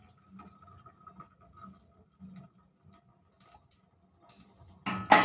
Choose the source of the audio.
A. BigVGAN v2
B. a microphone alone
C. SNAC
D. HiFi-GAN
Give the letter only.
B